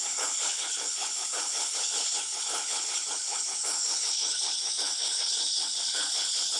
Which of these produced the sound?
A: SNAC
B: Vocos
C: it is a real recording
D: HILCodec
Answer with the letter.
D